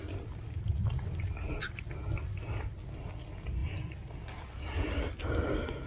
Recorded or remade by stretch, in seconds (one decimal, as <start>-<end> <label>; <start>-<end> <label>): 0.0-5.9 recorded